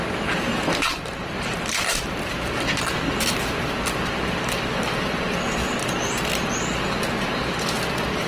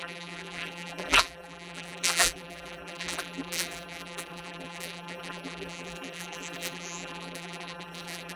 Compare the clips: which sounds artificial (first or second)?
second